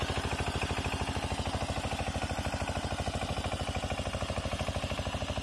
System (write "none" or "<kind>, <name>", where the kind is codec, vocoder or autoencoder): none